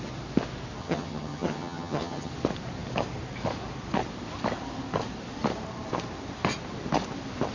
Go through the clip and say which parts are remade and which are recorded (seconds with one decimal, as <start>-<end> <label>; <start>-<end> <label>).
0.0-0.8 recorded; 0.8-2.3 remade; 2.3-7.5 recorded